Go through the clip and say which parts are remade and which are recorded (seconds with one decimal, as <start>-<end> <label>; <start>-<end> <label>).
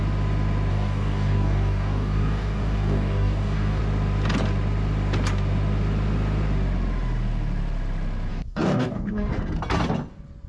0.0-0.7 recorded; 0.7-3.8 remade; 3.8-8.3 recorded; 8.3-9.3 remade; 9.3-10.5 recorded